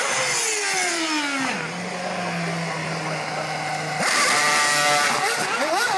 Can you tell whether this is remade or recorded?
recorded